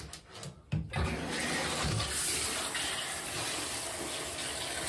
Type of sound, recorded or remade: recorded